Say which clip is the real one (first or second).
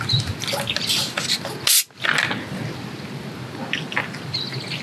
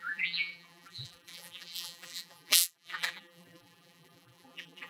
first